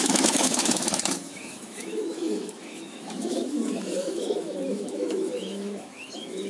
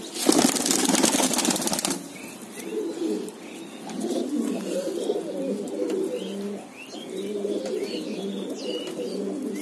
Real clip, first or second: second